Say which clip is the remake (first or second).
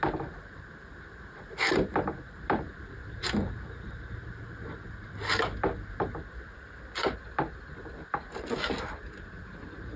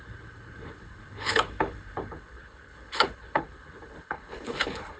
second